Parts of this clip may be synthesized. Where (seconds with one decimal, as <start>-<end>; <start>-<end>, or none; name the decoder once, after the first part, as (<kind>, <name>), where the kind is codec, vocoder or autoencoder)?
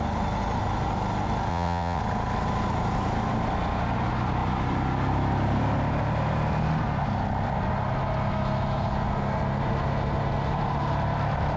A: 1.5-2.0 (vocoder, WaveNeXt)